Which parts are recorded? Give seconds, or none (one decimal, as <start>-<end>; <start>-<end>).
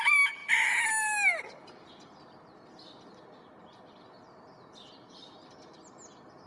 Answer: 0.0-6.5